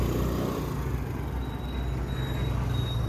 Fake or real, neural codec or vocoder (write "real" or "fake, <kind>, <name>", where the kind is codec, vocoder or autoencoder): real